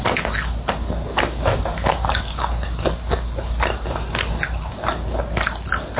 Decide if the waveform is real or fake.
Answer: real